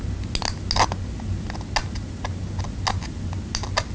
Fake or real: real